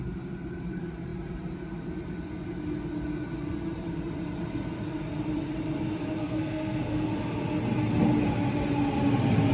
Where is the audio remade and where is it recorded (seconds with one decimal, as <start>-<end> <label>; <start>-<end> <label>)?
0.0-6.2 recorded; 6.2-7.1 remade; 7.1-9.5 recorded